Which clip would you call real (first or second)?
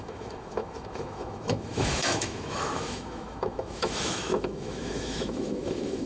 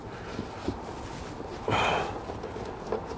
second